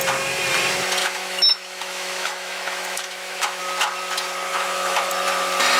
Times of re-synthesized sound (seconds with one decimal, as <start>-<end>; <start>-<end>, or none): 1.0-3.6; 4.5-5.1